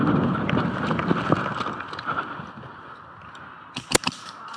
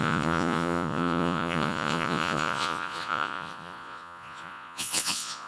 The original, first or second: first